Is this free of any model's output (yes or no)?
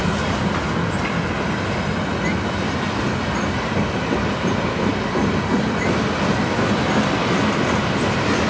yes